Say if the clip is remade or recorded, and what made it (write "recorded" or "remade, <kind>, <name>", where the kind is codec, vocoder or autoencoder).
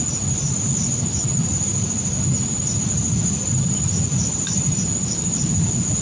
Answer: recorded